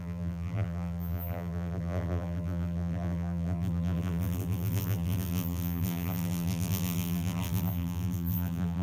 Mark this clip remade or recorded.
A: remade